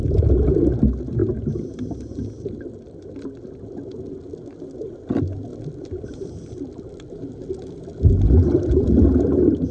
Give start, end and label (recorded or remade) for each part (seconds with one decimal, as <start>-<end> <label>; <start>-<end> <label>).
0.0-5.5 recorded; 5.5-8.1 remade; 8.1-9.7 recorded